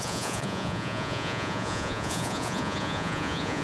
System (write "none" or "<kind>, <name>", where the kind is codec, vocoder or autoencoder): vocoder, Vocos